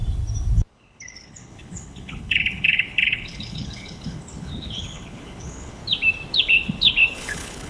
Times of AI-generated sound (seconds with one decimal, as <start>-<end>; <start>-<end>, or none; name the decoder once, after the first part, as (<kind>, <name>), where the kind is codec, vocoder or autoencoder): 0.7-5.8 (codec, HILCodec); 6.3-7.7